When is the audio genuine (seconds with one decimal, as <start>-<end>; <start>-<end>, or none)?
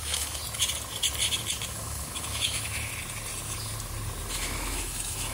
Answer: 0.4-1.7; 2.9-4.3